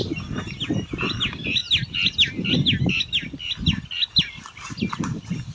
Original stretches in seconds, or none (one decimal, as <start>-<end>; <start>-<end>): 0.0-5.5

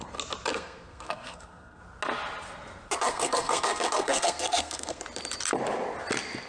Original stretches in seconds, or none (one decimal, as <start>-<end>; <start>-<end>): 0.0-0.5; 1.8-3.1; 5.0-6.5

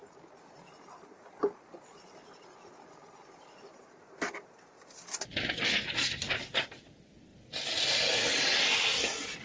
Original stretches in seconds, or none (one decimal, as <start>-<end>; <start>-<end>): 0.0-9.4

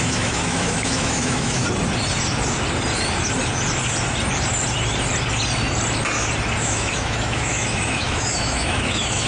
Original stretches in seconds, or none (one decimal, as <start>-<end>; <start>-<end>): 1.6-6.6